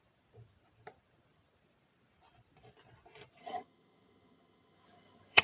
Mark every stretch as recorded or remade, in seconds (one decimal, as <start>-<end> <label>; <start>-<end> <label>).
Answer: 0.0-3.4 recorded; 3.4-5.4 remade